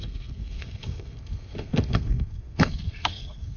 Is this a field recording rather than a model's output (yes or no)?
no